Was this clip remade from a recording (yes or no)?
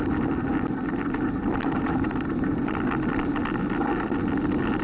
no